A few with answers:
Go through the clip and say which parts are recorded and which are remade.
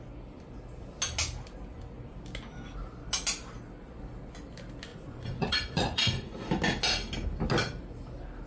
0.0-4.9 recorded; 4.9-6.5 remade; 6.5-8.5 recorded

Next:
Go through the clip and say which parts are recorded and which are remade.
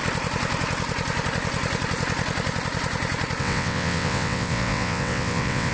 0.0-3.4 recorded; 3.4-5.7 remade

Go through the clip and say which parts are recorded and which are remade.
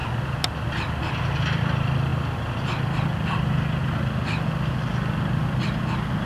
0.0-6.3 recorded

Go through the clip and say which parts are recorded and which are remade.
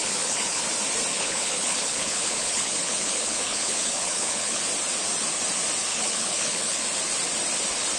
0.0-0.6 remade; 0.6-1.1 recorded; 1.1-4.6 remade; 4.6-5.9 recorded; 5.9-6.8 remade; 6.8-8.0 recorded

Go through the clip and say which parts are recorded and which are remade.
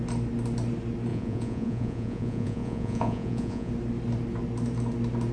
0.0-1.1 recorded; 1.1-3.7 remade; 3.7-5.3 recorded